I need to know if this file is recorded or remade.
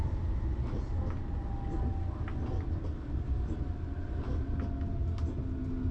recorded